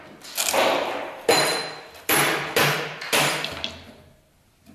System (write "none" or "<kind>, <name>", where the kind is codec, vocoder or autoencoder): none